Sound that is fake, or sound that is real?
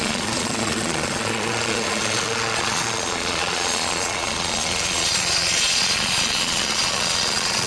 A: fake